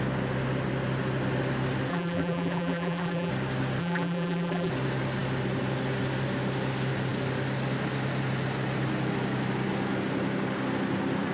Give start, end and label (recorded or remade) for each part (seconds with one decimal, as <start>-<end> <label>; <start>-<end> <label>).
0.0-1.9 recorded; 1.9-3.3 remade; 3.3-3.8 recorded; 3.8-4.7 remade; 4.7-11.3 recorded